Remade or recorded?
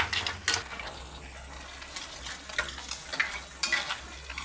recorded